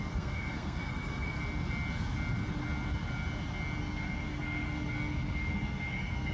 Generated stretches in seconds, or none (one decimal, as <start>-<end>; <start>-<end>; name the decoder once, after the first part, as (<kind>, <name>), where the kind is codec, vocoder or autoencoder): 0.0-1.4 (codec, SNAC); 3.8-6.3